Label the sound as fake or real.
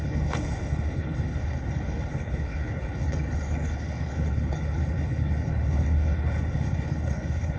fake